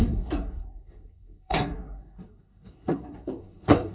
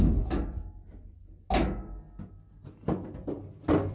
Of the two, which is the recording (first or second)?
second